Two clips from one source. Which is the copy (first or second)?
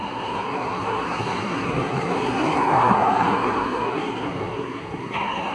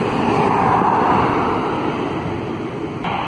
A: first